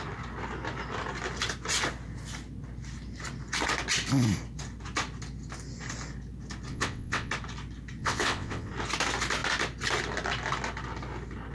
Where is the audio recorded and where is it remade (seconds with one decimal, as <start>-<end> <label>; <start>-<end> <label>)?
0.0-6.7 recorded; 6.7-7.3 remade; 7.3-8.0 recorded; 8.0-8.7 remade; 8.7-11.5 recorded